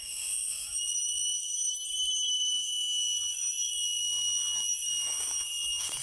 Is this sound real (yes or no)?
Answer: no